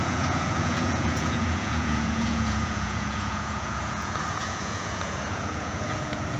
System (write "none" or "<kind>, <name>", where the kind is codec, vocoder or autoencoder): vocoder, Vocos